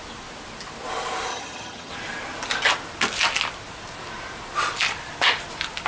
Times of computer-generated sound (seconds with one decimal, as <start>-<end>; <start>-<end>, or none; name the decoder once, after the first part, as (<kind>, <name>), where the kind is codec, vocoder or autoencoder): 1.3-1.9 (vocoder, HiFi-GAN)